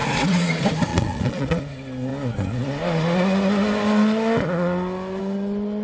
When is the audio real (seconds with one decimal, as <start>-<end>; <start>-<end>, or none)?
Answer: 0.0-0.9; 1.6-5.8